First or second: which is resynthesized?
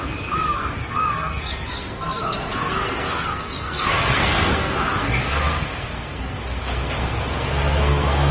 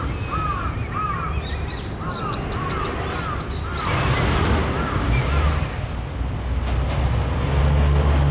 first